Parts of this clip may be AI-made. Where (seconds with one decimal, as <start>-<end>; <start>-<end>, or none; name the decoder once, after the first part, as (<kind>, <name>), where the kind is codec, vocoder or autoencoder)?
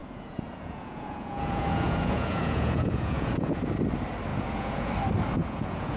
0.0-3.6 (vocoder, Vocos); 4.3-4.9; 5.4-6.0